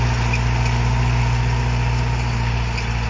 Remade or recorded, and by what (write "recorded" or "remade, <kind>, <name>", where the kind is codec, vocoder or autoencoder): recorded